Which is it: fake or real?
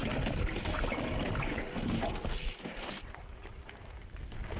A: real